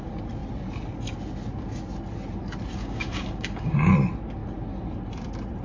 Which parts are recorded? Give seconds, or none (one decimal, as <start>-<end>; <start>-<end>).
0.0-2.8; 3.9-5.6